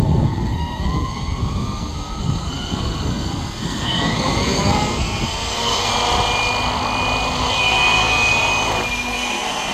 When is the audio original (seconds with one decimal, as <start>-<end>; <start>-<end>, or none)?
5.9-7.6; 8.5-9.1